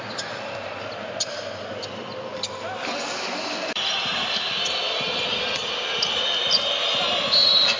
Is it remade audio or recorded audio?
recorded